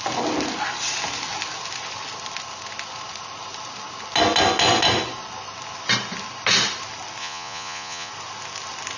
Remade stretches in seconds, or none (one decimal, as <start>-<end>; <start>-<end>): 7.2-8.1